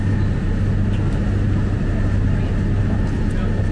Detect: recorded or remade recorded